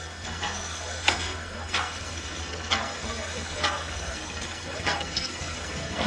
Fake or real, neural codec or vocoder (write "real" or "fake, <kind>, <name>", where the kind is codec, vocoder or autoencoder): fake, codec, SNAC